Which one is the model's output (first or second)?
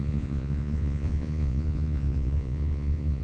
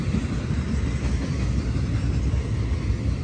first